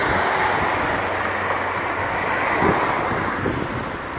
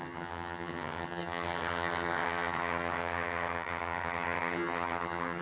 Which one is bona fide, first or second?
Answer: first